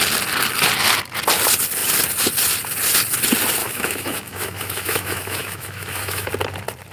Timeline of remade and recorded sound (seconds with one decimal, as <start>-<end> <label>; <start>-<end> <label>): 0.0-3.6 recorded; 3.6-6.3 remade; 6.3-6.9 recorded